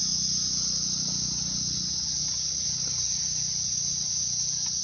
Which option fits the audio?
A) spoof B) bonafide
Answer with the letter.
B